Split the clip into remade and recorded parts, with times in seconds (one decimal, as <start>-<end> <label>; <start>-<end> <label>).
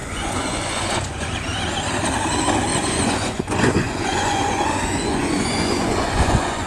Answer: 0.0-1.3 remade; 1.3-2.7 recorded; 2.7-6.7 remade